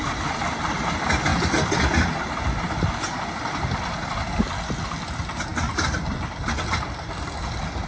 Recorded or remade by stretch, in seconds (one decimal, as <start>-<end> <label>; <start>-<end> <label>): 0.0-7.9 recorded